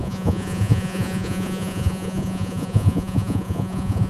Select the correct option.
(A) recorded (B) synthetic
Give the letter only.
B